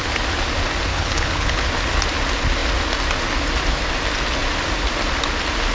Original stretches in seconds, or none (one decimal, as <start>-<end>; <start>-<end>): 0.0-0.9; 1.7-5.7

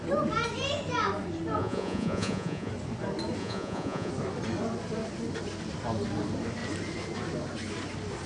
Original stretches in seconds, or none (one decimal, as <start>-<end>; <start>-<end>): 0.0-1.6; 2.7-3.4; 4.1-8.3